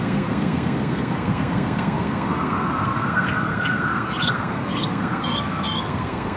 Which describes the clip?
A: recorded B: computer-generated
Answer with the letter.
B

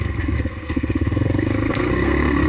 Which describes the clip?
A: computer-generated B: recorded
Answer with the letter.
A